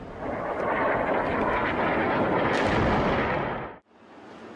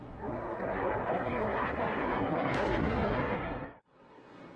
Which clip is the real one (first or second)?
first